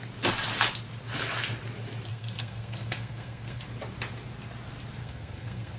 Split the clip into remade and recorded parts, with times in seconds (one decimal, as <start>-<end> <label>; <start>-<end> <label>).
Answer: 0.0-2.1 recorded; 2.1-3.6 remade; 3.6-5.0 recorded; 5.0-5.8 remade